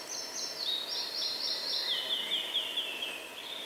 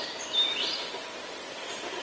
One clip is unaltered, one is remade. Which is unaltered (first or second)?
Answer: first